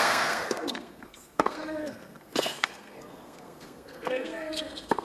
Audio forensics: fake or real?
fake